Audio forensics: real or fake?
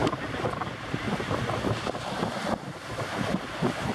real